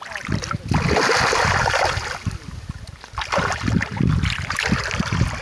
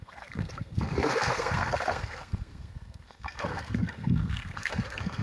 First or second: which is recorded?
first